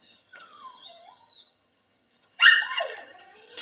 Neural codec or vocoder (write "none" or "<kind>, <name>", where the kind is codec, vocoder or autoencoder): vocoder, HiFi-GAN